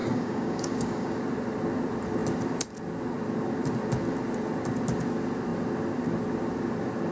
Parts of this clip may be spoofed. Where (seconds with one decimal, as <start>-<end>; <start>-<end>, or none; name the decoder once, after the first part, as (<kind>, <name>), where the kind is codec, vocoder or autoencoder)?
0.0-1.2 (codec, DAC)